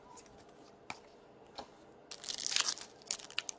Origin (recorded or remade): recorded